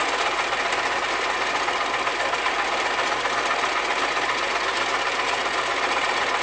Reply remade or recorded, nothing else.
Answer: recorded